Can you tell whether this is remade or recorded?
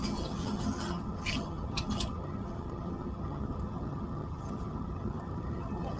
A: remade